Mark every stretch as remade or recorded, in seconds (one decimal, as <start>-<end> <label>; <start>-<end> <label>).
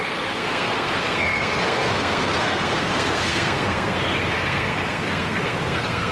0.0-6.1 remade